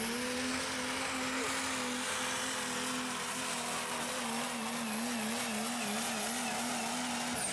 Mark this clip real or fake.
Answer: real